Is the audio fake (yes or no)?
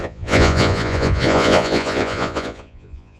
yes